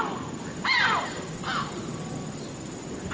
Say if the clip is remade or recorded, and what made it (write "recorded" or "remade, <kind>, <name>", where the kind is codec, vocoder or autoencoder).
recorded